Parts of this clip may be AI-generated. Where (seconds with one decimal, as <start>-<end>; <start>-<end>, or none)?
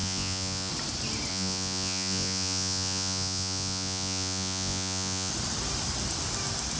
0.0-0.7; 1.3-5.3